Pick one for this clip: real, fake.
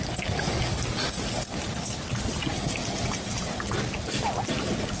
real